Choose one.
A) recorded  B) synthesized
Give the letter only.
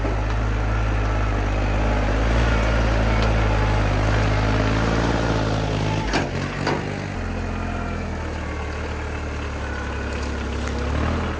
A